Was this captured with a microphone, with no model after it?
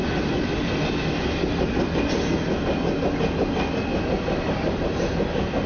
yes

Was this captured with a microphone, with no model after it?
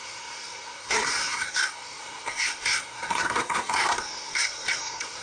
no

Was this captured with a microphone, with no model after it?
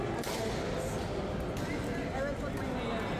yes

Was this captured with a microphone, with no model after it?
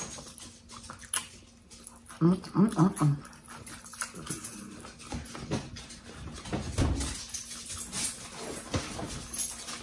yes